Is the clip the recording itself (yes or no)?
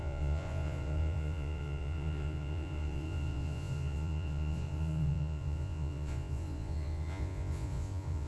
no